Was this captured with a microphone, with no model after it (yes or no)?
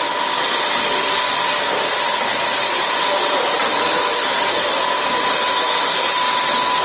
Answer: yes